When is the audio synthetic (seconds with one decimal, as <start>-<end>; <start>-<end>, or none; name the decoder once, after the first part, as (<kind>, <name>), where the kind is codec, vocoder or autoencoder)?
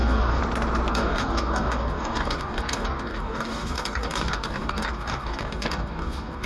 0.0-0.4 (codec, DAC); 0.9-6.5